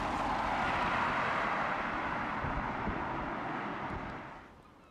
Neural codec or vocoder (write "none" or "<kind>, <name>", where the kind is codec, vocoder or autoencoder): none